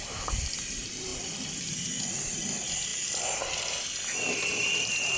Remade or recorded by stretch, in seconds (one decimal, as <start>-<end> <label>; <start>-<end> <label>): 0.0-5.2 recorded